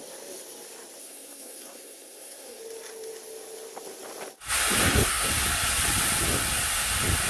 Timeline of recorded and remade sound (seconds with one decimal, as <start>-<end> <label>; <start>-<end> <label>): 0.0-1.0 recorded; 1.0-2.6 remade; 2.6-4.8 recorded; 4.8-5.3 remade; 5.3-7.3 recorded